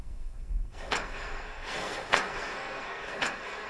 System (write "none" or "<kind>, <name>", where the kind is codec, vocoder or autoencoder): codec, SNAC